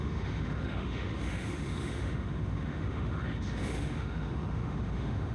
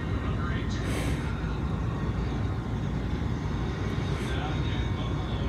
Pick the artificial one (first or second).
first